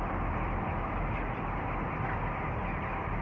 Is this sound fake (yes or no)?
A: no